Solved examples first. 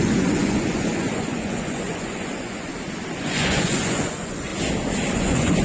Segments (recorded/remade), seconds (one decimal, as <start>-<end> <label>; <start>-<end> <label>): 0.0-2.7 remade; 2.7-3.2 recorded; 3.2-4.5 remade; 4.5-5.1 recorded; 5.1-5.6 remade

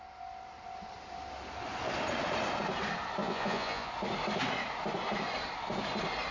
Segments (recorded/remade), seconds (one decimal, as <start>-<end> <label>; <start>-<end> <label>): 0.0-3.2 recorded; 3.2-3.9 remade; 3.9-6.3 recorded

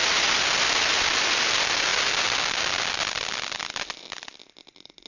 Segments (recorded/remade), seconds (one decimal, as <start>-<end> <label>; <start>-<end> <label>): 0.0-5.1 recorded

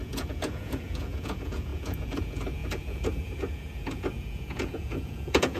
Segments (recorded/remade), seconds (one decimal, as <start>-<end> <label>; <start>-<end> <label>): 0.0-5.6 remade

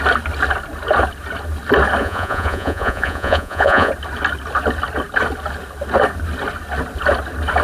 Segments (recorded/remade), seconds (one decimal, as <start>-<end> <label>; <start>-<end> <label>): 0.0-2.0 recorded; 2.0-3.9 remade; 3.9-7.6 recorded